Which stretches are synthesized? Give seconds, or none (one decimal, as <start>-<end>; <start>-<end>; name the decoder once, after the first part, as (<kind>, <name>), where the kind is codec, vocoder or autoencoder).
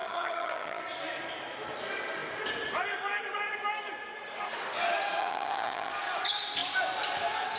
0.0-0.8 (vocoder, HiFi-GAN); 5.2-5.9